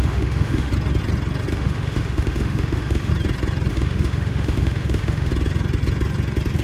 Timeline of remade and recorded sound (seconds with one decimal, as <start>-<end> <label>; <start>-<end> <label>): 0.0-0.7 remade; 0.7-1.5 recorded; 1.5-3.1 remade; 3.1-3.7 recorded; 3.7-5.3 remade; 5.3-6.6 recorded